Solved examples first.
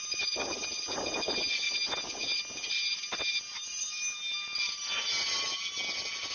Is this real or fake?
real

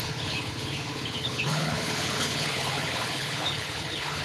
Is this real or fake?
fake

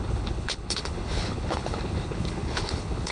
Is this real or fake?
fake